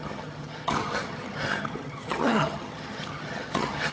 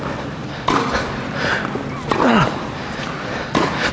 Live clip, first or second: second